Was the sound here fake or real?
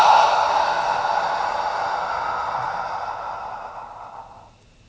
real